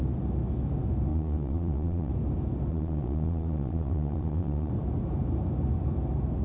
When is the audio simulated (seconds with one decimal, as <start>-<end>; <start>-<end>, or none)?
1.1-2.1; 2.7-4.7